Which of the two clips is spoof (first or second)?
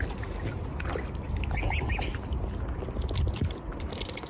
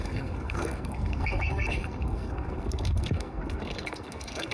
second